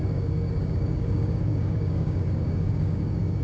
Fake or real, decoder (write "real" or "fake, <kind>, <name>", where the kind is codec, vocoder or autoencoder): fake, codec, DAC